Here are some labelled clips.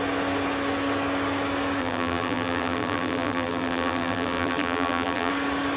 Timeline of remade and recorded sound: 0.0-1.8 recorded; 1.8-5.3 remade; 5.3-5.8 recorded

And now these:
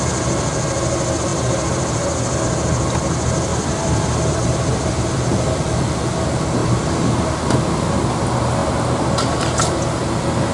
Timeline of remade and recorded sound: 0.0-1.3 recorded; 1.3-2.4 remade; 2.4-3.5 recorded; 3.5-5.0 remade; 5.0-6.6 recorded; 6.6-8.1 remade; 8.1-10.5 recorded